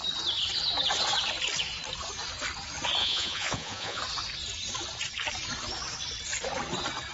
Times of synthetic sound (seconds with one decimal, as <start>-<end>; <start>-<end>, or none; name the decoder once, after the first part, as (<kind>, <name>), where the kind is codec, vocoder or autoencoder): 3.0-4.0 (vocoder, Vocos)